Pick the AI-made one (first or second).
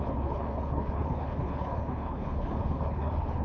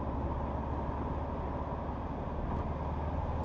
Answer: first